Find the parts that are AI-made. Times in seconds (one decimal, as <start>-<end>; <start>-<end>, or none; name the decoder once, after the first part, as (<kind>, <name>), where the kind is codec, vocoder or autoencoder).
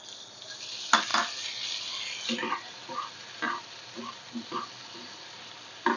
none